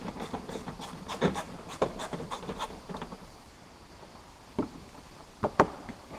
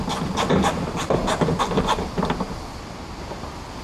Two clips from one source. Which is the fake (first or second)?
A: first